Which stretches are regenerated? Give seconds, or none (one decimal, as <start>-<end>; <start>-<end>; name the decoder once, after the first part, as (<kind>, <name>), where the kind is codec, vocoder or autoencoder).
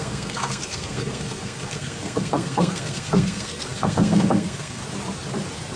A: 0.0-4.8 (codec, SNAC)